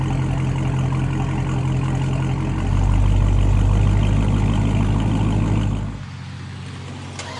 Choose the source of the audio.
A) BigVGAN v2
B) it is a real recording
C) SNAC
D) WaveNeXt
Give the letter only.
B